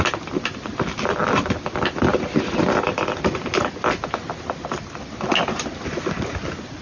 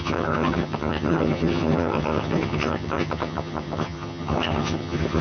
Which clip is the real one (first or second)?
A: first